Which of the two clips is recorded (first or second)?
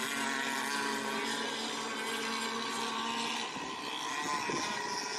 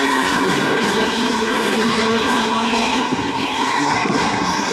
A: first